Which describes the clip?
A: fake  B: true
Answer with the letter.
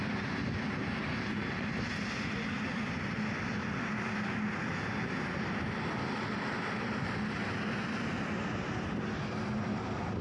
B